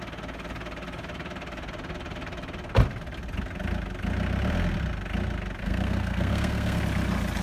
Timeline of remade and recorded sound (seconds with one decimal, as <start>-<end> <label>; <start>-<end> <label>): 0.0-5.6 recorded; 5.6-6.8 remade; 6.8-7.4 recorded